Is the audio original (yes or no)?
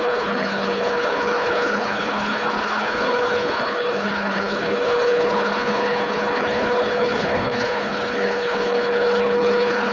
no